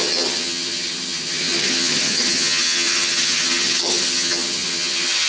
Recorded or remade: remade